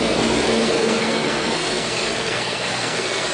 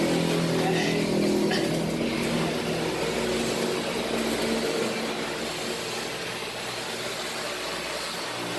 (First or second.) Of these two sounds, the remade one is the first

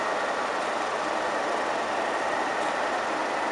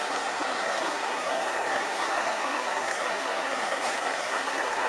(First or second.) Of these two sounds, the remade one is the second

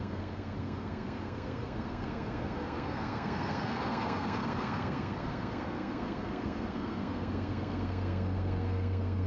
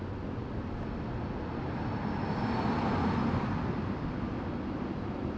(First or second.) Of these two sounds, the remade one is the first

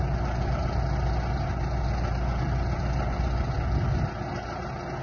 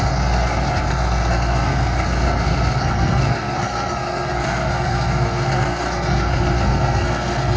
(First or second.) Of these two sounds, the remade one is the second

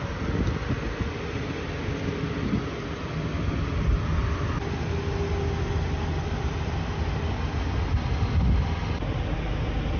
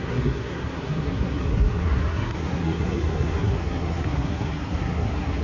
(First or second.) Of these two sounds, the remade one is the second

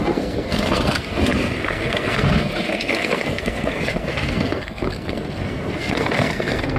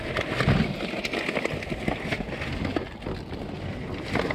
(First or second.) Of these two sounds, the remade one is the first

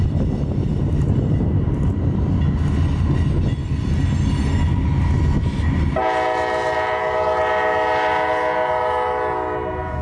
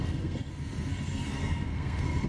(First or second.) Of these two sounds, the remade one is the second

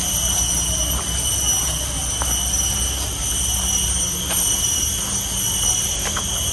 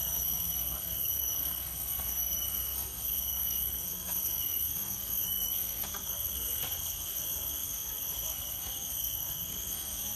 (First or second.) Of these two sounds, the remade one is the second